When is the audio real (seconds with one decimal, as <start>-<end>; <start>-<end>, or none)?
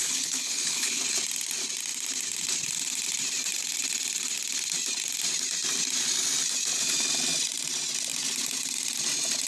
1.0-9.5